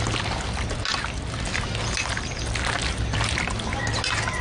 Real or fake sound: real